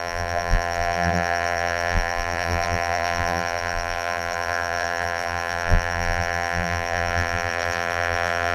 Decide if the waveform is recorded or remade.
remade